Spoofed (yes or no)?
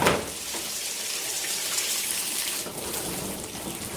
yes